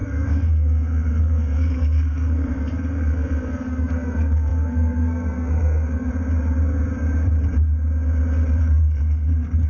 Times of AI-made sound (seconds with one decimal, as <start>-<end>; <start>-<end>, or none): 0.0-6.1; 8.6-9.7